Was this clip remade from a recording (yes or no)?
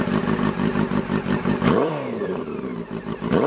no